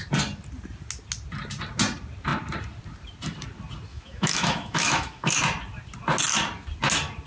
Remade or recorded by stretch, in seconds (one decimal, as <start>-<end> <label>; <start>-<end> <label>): 0.0-3.9 recorded; 3.9-5.3 remade; 5.3-7.3 recorded